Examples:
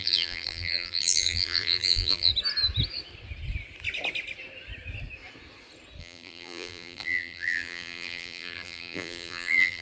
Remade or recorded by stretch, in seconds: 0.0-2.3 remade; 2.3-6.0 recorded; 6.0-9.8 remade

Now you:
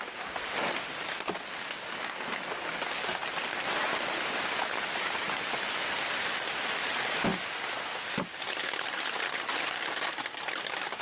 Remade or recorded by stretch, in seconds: 0.0-11.0 recorded

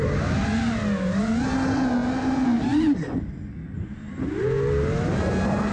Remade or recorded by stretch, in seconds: 0.0-5.7 recorded

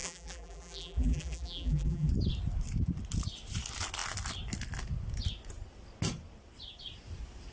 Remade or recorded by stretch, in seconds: 0.0-2.1 remade; 2.1-7.5 recorded

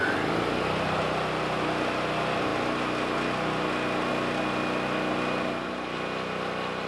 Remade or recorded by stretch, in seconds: 0.0-6.9 recorded

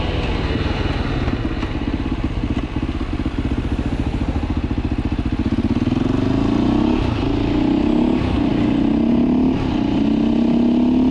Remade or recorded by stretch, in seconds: 0.0-11.1 recorded